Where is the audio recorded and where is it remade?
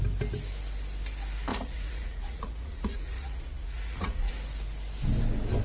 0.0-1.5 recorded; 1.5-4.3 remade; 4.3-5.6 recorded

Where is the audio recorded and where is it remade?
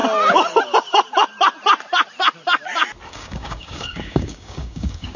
0.0-3.1 recorded; 3.1-5.2 remade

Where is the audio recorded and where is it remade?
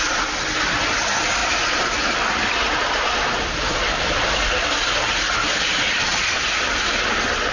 0.0-7.5 recorded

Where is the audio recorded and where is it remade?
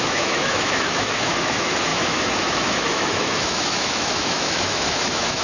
0.0-5.4 remade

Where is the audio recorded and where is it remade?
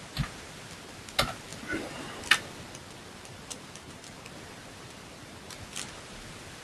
0.0-1.5 recorded; 1.5-5.5 remade; 5.5-6.6 recorded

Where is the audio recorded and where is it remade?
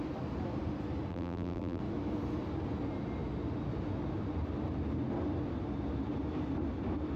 0.0-1.1 recorded; 1.1-1.8 remade; 1.8-7.2 recorded